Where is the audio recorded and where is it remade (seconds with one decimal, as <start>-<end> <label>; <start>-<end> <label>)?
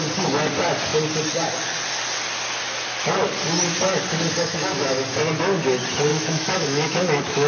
0.0-6.1 recorded; 6.1-7.5 remade